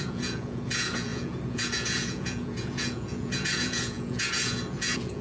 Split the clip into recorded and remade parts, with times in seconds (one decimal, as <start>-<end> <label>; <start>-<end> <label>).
0.0-5.2 remade